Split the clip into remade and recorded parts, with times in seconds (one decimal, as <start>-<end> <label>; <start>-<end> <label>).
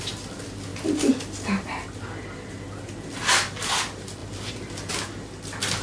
0.0-5.8 recorded